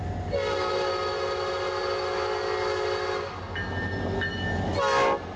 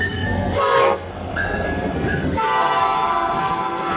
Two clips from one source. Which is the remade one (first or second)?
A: second